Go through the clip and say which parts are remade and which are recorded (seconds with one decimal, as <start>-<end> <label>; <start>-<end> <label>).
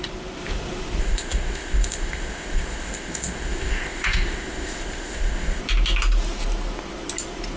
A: 0.0-1.0 recorded; 1.0-5.6 remade; 5.6-7.6 recorded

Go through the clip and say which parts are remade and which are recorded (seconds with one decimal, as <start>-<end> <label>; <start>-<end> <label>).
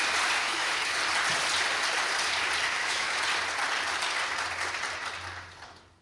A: 0.0-0.4 recorded; 0.4-1.0 remade; 1.0-2.7 recorded; 2.7-3.2 remade; 3.2-6.0 recorded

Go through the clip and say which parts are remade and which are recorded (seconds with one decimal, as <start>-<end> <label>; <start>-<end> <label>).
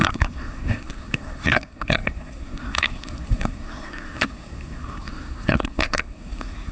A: 0.0-6.7 remade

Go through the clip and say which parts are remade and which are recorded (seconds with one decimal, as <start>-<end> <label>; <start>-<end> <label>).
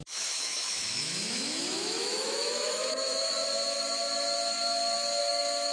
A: 0.0-3.4 remade; 3.4-5.2 recorded; 5.2-5.7 remade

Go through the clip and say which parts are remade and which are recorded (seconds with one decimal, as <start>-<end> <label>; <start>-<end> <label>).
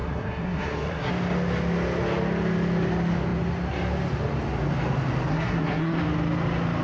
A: 0.0-1.1 remade; 1.1-5.3 recorded; 5.3-6.0 remade; 6.0-6.8 recorded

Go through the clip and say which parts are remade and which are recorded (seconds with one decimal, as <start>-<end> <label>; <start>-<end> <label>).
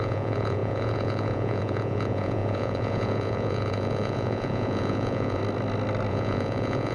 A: 0.0-5.4 remade; 5.4-6.1 recorded; 6.1-6.9 remade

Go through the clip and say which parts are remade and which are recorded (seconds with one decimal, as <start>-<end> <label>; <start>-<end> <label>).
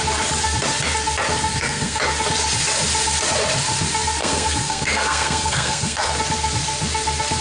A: 0.0-1.5 recorded; 1.5-2.0 remade; 2.0-4.2 recorded; 4.2-6.1 remade; 6.1-7.4 recorded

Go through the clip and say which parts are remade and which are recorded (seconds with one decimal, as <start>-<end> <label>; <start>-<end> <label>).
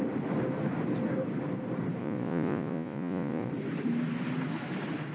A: 0.0-2.0 recorded; 2.0-3.5 remade; 3.5-5.1 recorded